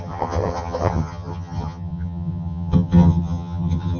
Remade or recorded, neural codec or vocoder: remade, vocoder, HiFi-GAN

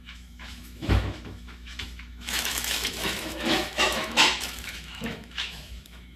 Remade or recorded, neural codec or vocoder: remade, autoencoder, DAC-VAE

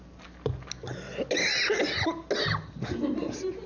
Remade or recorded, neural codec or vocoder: recorded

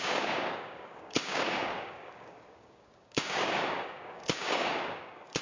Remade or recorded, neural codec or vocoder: remade, codec, DAC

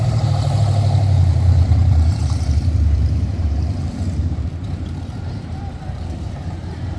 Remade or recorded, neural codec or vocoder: remade, vocoder, BigVGAN v2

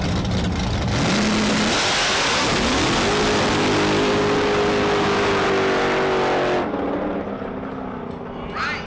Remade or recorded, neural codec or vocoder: recorded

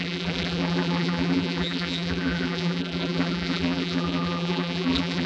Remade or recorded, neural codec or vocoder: remade, vocoder, BigVGAN v2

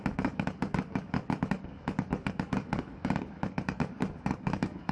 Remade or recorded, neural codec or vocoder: remade, codec, DAC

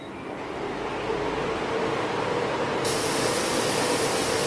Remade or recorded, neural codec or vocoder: recorded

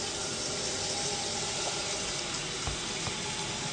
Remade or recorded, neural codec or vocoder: recorded